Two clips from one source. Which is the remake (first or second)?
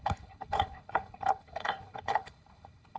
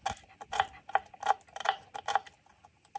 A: first